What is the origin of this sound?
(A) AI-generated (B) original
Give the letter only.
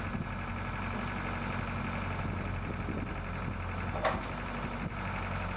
B